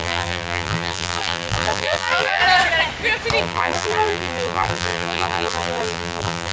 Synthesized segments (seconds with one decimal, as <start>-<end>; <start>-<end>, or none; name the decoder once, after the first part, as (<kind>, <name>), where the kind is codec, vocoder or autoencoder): 0.0-2.4 (vocoder, BigVGAN v2); 3.4-6.5